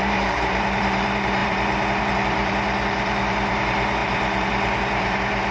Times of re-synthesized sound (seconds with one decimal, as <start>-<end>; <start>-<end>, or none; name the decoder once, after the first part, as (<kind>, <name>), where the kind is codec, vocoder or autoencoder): 0.0-5.5 (vocoder, BigVGAN v2)